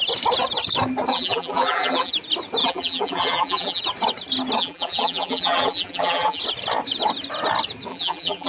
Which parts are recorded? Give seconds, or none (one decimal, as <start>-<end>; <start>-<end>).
0.0-1.1; 2.1-2.6; 3.8-4.6; 6.4-7.9

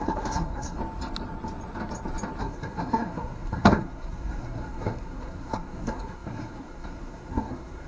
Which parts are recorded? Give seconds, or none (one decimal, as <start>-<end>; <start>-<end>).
0.8-2.4